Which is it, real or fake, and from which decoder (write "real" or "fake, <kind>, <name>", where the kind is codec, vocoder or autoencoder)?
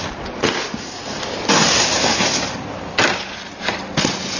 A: real